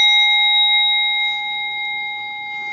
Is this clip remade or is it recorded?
recorded